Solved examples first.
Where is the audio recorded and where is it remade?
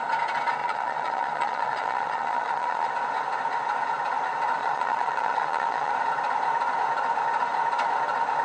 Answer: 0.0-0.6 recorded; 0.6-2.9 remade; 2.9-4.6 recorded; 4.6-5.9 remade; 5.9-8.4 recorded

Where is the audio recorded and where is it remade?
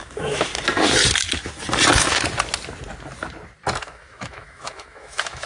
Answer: 0.0-0.5 remade; 0.5-3.8 recorded; 3.8-5.5 remade